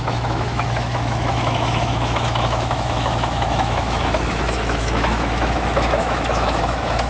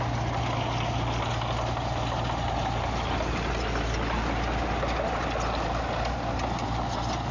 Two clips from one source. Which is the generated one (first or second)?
first